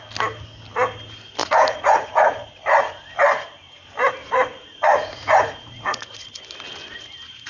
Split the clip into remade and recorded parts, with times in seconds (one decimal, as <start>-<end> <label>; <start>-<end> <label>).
0.0-1.4 recorded; 1.4-2.5 remade; 2.5-4.2 recorded; 4.2-6.4 remade; 6.4-7.5 recorded